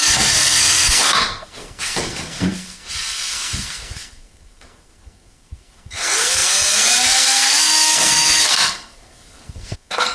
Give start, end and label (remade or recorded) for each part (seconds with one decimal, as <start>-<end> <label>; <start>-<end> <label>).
0.0-10.1 remade